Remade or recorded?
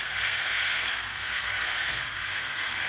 remade